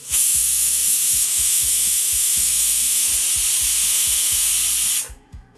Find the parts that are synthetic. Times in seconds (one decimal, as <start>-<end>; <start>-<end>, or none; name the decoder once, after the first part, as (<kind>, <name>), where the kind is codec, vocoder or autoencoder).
0.0-3.1 (autoencoder, DAC-VAE); 3.7-4.5; 5.1-5.6